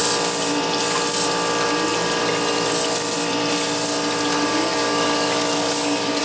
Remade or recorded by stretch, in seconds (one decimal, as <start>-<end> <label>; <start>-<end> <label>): 0.0-4.5 recorded; 4.5-6.2 remade